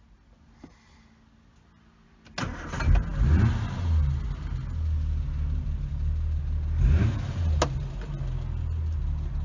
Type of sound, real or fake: real